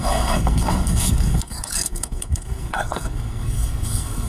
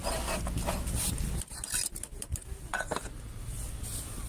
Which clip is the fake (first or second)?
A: first